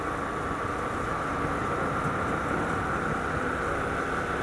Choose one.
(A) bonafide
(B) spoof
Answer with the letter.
A